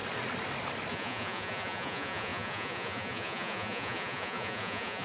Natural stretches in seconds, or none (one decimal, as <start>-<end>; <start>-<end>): 0.0-0.9